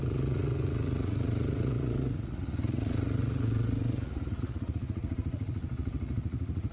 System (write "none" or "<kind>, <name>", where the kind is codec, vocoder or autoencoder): vocoder, Vocos